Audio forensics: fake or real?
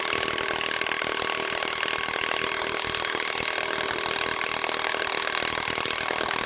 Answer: real